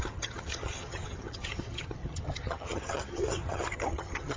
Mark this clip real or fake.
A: fake